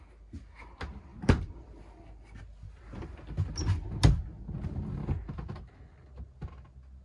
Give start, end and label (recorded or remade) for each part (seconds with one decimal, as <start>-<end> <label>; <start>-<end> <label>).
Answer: 0.0-7.0 recorded